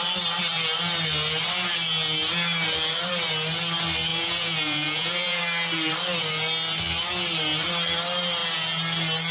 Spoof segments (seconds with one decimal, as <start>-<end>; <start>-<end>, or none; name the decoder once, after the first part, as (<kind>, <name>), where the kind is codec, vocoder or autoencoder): 4.1-5.4 (vocoder, Vocos)